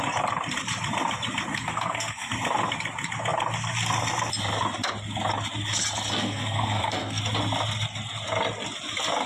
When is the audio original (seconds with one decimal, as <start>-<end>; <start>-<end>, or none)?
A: 0.0-1.5; 2.3-6.2; 7.2-9.3